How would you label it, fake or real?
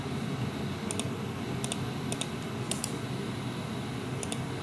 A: real